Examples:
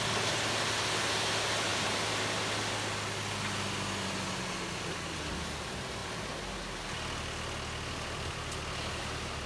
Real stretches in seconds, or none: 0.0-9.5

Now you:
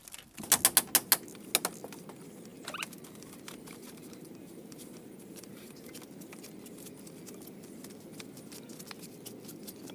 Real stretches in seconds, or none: 0.0-2.5; 5.9-9.9

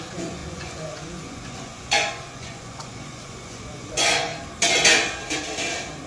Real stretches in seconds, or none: 4.3-6.1